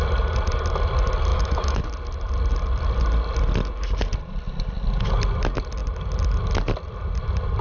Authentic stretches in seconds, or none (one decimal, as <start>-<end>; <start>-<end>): 0.0-1.3; 1.8-7.6

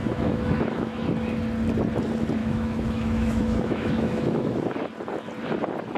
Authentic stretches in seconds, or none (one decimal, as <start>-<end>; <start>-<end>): 1.0-2.4; 4.6-6.0

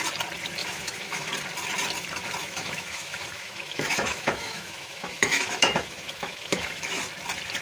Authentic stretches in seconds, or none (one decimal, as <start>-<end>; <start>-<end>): 0.0-0.6; 1.3-2.4; 7.0-7.6

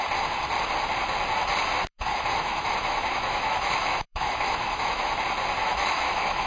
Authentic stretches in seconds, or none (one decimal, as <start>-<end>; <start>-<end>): 0.0-1.9; 5.1-5.6

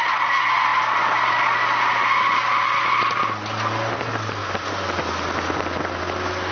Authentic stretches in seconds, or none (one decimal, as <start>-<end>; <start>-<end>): 0.0-6.5

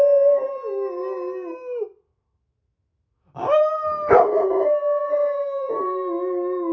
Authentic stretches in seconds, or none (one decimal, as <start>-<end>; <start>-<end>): 0.0-2.1; 3.6-5.0; 5.7-6.7